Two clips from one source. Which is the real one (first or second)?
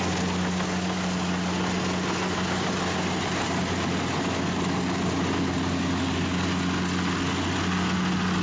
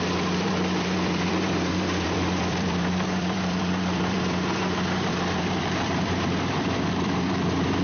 first